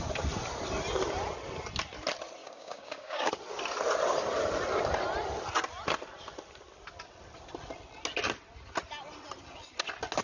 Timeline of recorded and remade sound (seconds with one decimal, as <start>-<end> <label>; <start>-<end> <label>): 0.0-2.4 recorded; 2.4-3.3 remade; 3.3-10.2 recorded